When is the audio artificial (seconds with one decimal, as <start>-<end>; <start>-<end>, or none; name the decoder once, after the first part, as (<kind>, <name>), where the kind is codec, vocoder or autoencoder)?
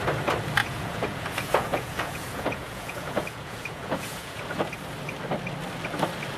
0.6-4.4 (vocoder, Vocos)